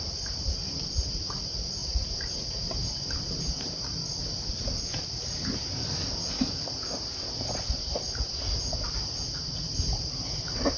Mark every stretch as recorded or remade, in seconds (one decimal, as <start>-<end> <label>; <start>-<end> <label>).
0.0-4.0 remade; 4.0-4.5 recorded; 4.5-10.8 remade